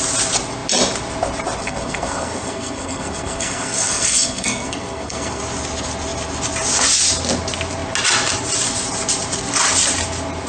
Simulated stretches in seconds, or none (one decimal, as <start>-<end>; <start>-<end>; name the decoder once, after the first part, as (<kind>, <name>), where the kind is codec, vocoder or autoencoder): 1.6-5.4 (codec, SNAC)